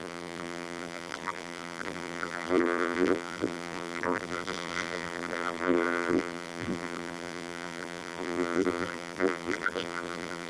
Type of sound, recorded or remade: remade